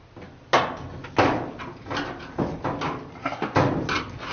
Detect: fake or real real